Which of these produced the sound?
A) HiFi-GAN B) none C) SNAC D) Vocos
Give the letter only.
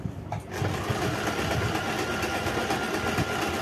B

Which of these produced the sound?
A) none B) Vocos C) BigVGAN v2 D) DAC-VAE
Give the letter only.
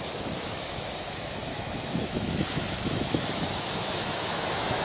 D